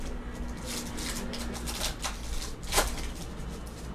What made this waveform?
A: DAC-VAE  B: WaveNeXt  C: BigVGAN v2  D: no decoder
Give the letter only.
D